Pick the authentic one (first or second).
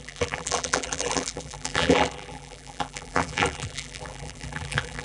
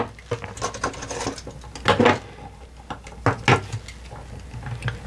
second